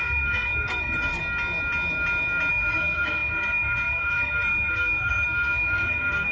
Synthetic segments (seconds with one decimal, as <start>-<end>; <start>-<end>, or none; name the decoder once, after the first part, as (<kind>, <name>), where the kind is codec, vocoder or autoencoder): 0.0-1.2 (codec, SNAC); 2.5-6.3